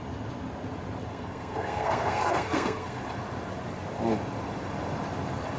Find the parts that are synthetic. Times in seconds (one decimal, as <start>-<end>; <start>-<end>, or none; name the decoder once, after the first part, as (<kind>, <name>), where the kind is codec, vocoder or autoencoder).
1.1-3.0 (codec, SNAC)